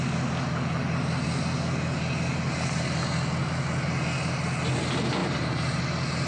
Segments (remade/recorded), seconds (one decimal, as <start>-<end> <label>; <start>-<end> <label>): 0.0-5.2 recorded; 5.2-5.8 remade; 5.8-6.3 recorded